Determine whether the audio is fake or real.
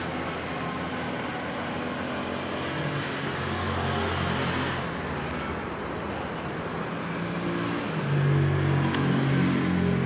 real